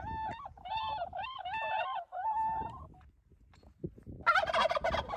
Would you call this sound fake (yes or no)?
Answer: no